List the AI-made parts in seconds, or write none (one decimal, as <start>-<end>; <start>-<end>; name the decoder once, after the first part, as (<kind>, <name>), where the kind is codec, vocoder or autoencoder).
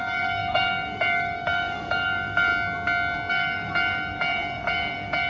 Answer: 0.0-2.5 (codec, DAC); 3.3-5.3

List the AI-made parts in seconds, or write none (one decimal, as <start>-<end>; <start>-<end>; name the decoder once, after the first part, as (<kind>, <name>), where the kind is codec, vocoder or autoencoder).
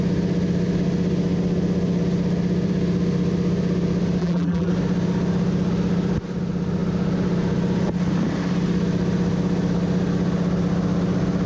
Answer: 4.2-4.7 (vocoder, BigVGAN v2)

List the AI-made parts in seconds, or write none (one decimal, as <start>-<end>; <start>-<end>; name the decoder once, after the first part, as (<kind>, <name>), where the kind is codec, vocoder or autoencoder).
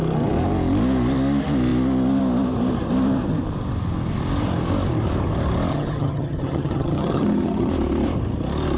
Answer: 5.7-7.7 (vocoder, HiFi-GAN)